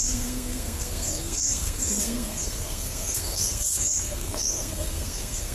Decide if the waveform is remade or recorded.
remade